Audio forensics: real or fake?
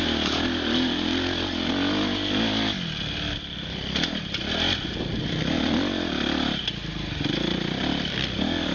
real